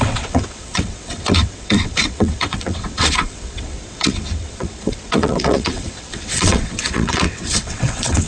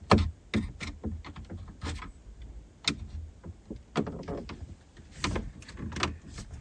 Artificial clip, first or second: first